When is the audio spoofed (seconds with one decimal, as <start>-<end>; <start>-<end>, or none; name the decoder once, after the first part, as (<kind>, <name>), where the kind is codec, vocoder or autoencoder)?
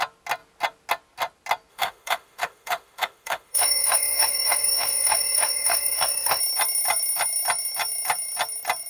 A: 1.7-6.4 (autoencoder, DAC-VAE)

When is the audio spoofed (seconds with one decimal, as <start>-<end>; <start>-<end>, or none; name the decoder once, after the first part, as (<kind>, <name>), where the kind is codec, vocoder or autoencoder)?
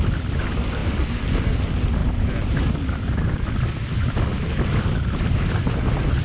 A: none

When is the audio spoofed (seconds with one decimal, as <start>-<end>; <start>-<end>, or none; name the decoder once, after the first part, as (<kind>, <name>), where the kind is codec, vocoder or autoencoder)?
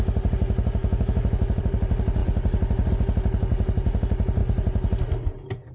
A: 0.8-1.6 (autoencoder, DAC-VAE)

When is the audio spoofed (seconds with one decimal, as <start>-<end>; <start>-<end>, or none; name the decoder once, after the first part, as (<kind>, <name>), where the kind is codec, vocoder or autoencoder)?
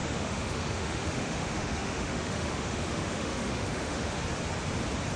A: 0.0-4.2 (autoencoder, DAC-VAE)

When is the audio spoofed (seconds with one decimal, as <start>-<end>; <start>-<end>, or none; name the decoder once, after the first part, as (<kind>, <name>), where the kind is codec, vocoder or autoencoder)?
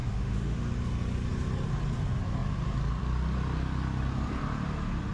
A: 0.0-0.7 (autoencoder, DAC-VAE)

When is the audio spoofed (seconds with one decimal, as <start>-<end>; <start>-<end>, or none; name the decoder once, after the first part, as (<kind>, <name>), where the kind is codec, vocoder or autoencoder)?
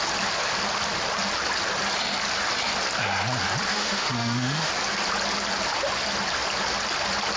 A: 3.7-4.7 (autoencoder, DAC-VAE)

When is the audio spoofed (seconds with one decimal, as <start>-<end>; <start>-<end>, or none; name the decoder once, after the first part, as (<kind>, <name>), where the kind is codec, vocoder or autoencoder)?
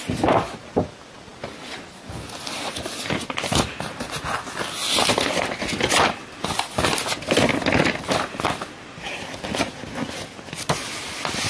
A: none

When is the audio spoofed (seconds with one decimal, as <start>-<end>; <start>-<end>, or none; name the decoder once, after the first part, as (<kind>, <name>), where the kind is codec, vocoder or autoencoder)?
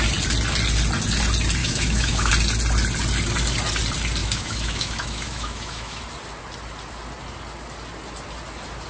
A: 1.6-2.3 (autoencoder, DAC-VAE); 4.2-6.0